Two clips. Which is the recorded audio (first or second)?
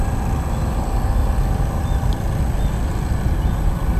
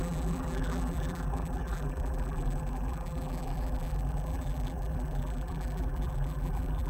first